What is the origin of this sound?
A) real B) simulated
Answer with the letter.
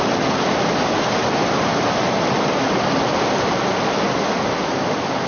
A